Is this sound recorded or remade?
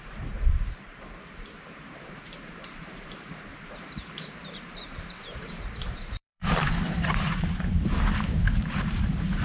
remade